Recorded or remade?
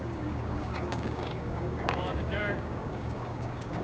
remade